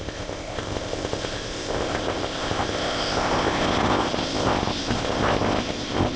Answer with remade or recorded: remade